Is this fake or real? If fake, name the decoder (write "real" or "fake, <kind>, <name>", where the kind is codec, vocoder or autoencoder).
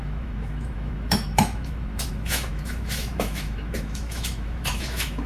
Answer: fake, autoencoder, DAC-VAE